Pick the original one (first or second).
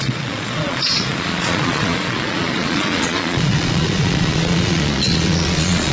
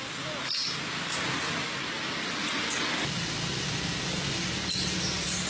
second